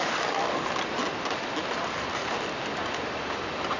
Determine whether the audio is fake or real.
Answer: real